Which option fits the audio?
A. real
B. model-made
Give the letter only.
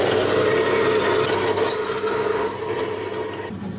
A